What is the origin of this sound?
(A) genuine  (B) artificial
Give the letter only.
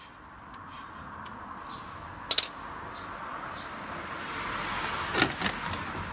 A